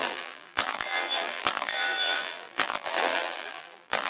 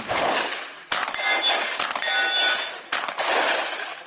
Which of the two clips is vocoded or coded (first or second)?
first